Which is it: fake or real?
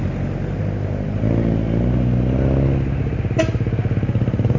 real